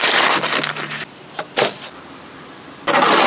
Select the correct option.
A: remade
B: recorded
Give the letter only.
A